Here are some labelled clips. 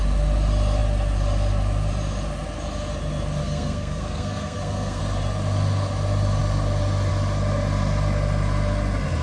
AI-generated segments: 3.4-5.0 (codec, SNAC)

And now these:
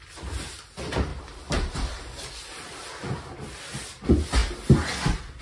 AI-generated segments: 1.1-2.8 (vocoder, BigVGAN v2)

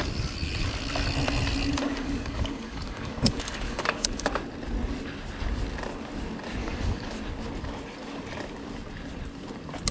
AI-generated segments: 1.8-4.3 (codec, DAC); 6.6-7.2